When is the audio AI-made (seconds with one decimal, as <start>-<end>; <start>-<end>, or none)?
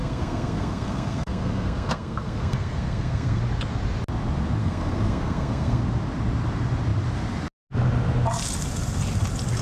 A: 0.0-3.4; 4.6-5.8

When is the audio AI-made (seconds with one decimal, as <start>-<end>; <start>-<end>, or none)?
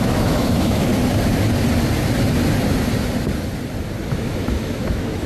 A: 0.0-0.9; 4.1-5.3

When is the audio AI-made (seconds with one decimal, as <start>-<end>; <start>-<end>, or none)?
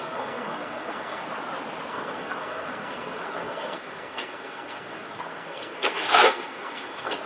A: 0.0-1.2; 1.9-7.3